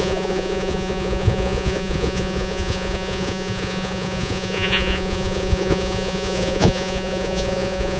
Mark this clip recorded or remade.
remade